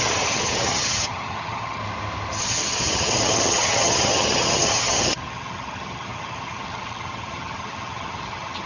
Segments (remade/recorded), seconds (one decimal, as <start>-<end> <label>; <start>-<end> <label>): 0.0-1.8 remade; 1.8-2.4 recorded; 2.4-8.7 remade